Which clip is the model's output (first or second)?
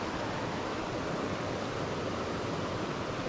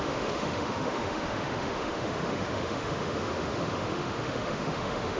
second